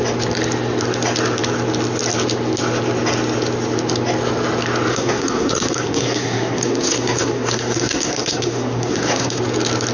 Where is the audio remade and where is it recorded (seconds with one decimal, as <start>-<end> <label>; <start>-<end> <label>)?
0.0-4.9 recorded; 4.9-9.4 remade; 9.4-9.9 recorded